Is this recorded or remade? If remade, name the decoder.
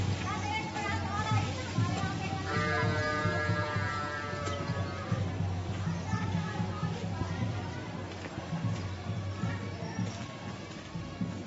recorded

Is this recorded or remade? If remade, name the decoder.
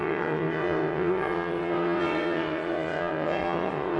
remade, vocoder, WaveNeXt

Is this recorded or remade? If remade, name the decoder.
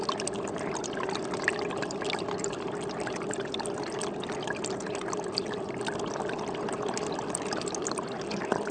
recorded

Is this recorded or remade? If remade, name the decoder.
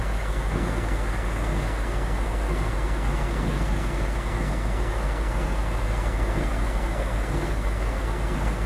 remade, codec, SNAC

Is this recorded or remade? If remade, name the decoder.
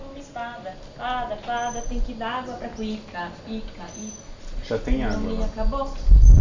recorded